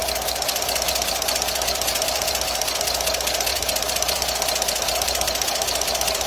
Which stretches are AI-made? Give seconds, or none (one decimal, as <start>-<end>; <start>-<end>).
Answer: 0.0-2.8; 3.5-6.3